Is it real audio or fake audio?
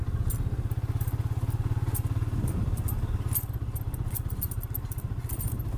real